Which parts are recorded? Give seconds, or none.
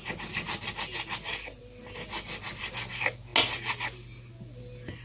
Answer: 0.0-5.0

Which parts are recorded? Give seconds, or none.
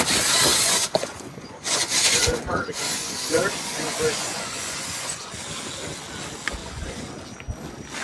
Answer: 0.0-0.5; 5.3-6.6; 7.1-8.0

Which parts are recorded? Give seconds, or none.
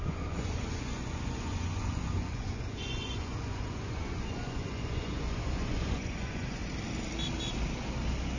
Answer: 6.6-8.4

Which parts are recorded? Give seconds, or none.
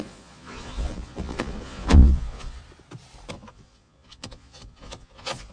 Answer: 2.6-3.3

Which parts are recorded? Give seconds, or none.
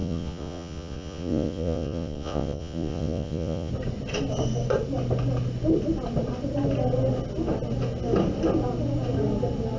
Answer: 3.7-9.8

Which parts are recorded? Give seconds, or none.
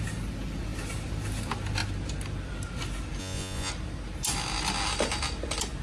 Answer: 0.0-3.2; 3.7-5.8